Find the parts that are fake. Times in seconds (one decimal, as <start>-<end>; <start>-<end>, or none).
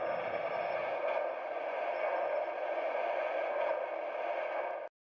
0.8-3.8